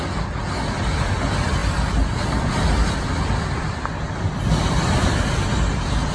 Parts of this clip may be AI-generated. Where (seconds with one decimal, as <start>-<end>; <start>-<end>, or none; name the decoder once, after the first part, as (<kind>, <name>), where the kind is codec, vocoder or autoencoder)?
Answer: none